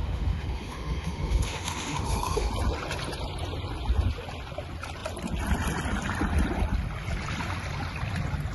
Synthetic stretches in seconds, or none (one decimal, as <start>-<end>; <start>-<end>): 0.0-2.5